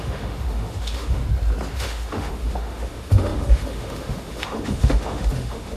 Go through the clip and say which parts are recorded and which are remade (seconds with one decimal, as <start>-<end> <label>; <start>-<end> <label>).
0.0-1.2 remade; 1.2-1.7 recorded; 1.7-5.8 remade